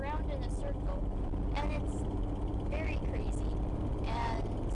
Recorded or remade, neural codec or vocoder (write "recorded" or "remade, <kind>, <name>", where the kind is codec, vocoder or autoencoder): recorded